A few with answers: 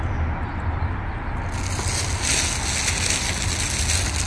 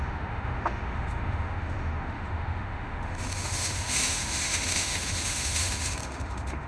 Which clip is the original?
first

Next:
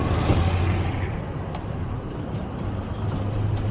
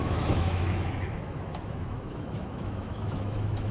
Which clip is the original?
first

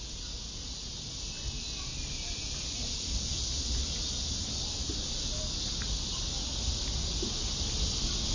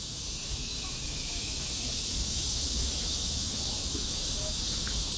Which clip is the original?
first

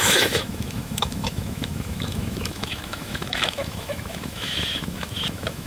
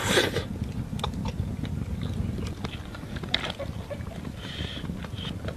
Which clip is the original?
second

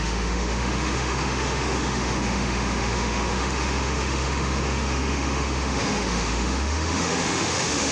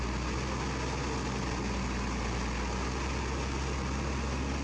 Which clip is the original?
second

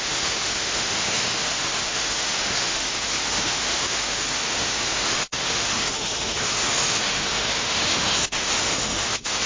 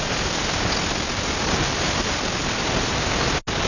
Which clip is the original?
second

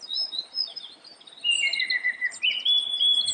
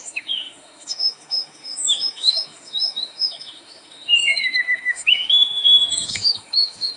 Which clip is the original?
first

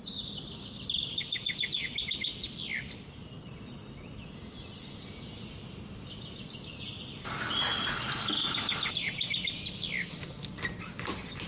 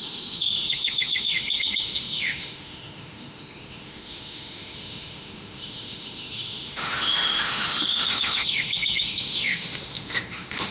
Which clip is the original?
first